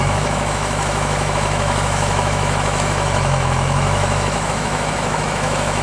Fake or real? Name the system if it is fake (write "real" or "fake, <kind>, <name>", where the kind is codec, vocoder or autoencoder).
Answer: fake, autoencoder, DAC-VAE